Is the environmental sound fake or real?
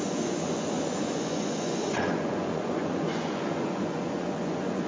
fake